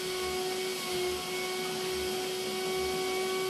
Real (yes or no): yes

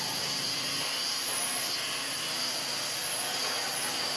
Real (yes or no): yes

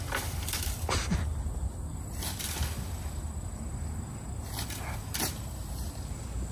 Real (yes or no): yes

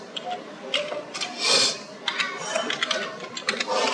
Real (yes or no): no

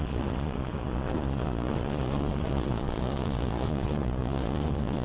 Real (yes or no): no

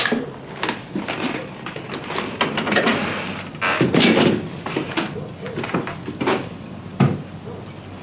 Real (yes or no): yes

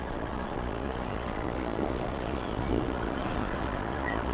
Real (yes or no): no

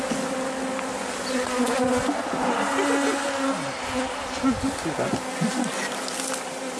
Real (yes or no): yes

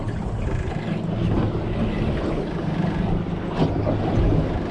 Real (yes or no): yes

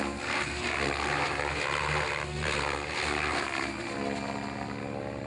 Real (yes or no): yes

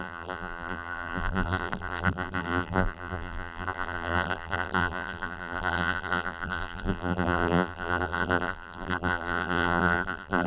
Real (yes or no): no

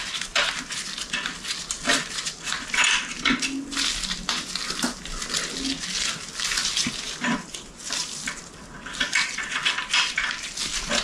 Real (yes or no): yes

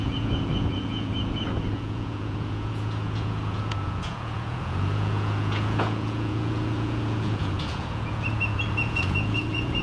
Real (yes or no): no